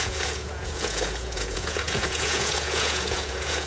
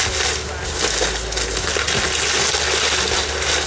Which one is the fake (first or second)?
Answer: first